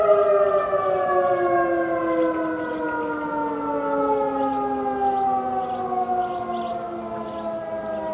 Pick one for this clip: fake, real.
real